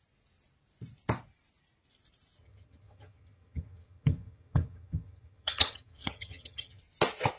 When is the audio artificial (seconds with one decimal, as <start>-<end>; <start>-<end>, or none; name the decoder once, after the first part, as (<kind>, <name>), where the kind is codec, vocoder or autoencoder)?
2.4-6.8 (vocoder, HiFi-GAN)